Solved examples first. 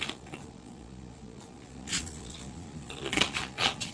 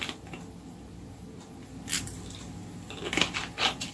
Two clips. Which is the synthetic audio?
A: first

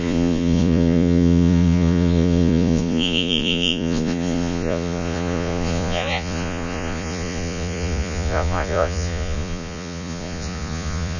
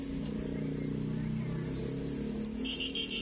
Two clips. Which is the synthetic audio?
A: first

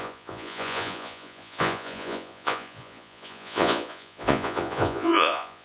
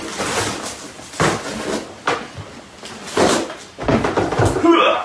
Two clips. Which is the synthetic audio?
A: first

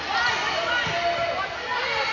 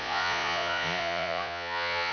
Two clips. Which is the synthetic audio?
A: second